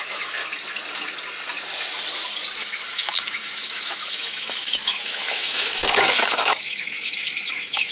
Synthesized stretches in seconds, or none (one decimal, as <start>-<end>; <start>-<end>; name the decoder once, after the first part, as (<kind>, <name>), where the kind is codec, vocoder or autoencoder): 0.0-0.4 (autoencoder, DAC-VAE); 2.6-7.9

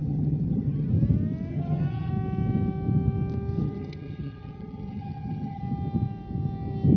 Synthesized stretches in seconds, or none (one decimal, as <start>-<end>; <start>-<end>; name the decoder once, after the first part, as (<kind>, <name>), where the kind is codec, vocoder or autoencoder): 0.0-0.9 (vocoder, HiFi-GAN); 1.5-2.1; 3.6-5.6

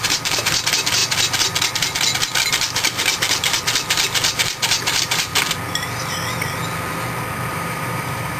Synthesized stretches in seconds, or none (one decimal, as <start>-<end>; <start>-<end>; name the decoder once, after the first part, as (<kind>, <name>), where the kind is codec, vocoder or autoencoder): 0.0-1.0 (vocoder, BigVGAN v2); 2.4-5.3; 7.5-8.4

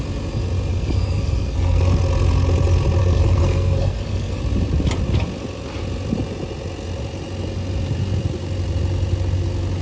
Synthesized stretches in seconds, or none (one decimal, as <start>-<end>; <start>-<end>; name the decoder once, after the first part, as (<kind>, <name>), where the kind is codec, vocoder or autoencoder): 0.7-2.0 (codec, SNAC); 3.0-4.4

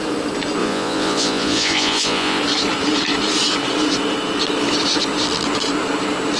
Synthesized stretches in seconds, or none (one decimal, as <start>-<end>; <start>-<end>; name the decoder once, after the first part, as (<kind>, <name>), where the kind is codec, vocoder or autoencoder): 0.6-2.4 (vocoder, Vocos)

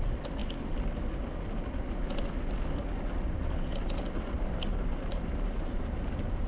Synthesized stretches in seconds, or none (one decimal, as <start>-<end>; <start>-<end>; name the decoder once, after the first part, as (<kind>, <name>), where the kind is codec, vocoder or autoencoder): 4.7-6.5 (vocoder, BigVGAN v2)